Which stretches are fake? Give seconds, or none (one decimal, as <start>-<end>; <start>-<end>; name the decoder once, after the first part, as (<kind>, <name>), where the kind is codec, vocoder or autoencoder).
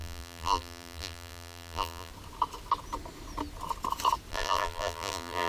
0.0-2.1 (vocoder, BigVGAN v2); 4.3-5.5